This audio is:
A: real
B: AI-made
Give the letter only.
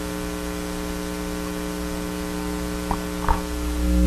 A